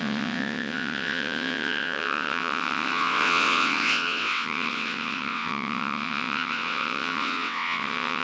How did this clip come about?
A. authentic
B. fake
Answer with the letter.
B